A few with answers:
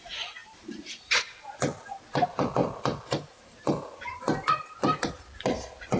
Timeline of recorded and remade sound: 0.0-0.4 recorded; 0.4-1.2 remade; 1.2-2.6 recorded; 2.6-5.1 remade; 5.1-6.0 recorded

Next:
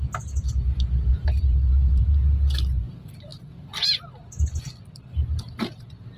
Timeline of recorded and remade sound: 0.0-1.1 recorded; 1.1-2.0 remade; 2.0-6.2 recorded

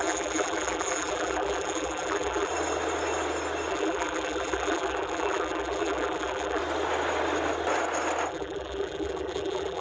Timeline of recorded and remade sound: 0.0-2.5 remade; 2.5-3.7 recorded; 3.7-6.6 remade; 6.6-8.3 recorded; 8.3-9.8 remade

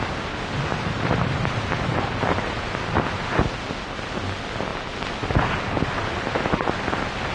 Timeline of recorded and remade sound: 0.0-0.7 recorded; 0.7-2.8 remade; 2.8-7.3 recorded

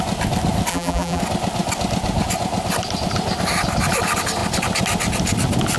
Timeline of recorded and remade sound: 0.0-0.7 recorded; 0.7-1.2 remade; 1.2-5.8 recorded